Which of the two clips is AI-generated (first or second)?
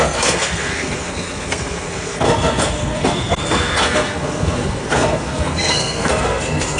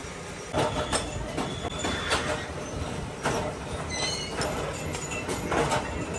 first